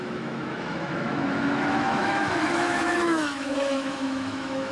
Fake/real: fake